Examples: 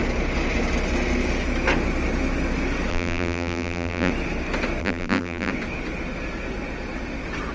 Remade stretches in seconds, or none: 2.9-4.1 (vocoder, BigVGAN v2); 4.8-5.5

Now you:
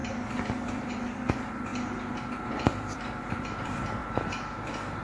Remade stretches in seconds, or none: 0.0-1.7 (vocoder, BigVGAN v2); 2.5-4.0

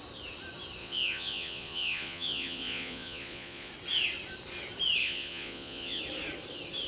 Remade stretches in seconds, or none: 0.8-3.7 (vocoder, Vocos); 5.0-6.0

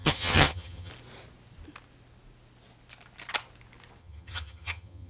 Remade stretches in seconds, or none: 0.0-0.9 (vocoder, HiFi-GAN); 4.0-5.1